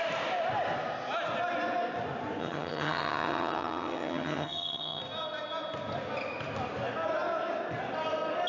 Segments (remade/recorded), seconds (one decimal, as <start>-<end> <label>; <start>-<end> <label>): 0.0-2.4 recorded; 2.4-5.0 remade; 5.0-8.5 recorded